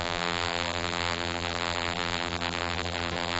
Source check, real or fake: fake